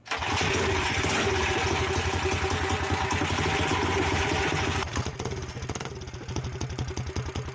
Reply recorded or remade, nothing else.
recorded